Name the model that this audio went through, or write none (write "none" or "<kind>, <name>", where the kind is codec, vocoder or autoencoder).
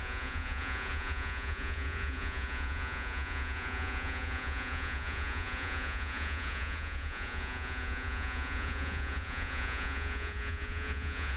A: vocoder, Vocos